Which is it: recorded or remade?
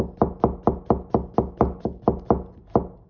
recorded